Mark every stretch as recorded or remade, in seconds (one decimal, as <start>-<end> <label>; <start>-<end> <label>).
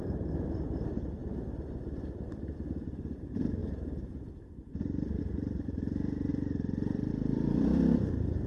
0.0-3.6 remade; 3.6-5.2 recorded; 5.2-6.3 remade; 6.3-7.1 recorded; 7.1-8.5 remade